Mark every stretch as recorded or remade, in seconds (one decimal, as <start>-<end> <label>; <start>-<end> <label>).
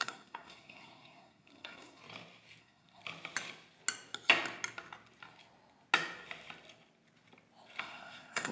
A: 0.0-2.0 remade; 2.0-2.6 recorded; 2.6-3.0 remade; 3.0-7.8 recorded; 7.8-8.5 remade